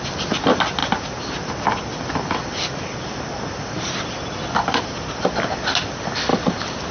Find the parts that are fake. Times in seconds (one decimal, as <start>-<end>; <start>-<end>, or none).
none

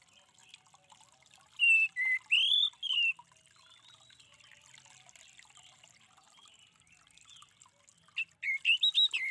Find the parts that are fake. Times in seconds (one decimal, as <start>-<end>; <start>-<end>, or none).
none

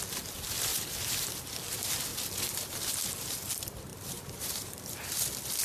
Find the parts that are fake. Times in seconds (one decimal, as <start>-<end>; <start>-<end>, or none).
0.7-1.3; 3.9-5.1

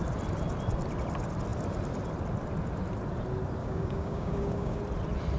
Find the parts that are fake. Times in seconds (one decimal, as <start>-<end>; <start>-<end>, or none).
3.6-4.8

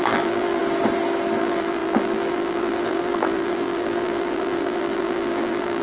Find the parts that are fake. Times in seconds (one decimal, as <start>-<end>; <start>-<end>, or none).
0.0-0.6; 1.4-5.8

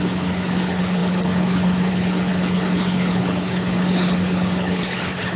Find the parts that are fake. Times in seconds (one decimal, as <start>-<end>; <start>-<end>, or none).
0.0-5.4